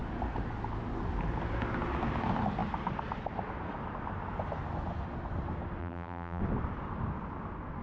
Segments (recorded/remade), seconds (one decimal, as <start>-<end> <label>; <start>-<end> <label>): 0.0-5.8 recorded; 5.8-6.4 remade; 6.4-7.8 recorded